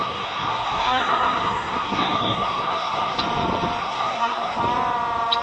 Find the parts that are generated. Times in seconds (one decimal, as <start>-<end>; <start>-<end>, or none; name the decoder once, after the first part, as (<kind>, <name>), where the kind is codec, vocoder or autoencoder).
0.0-3.2 (codec, SNAC); 3.8-4.6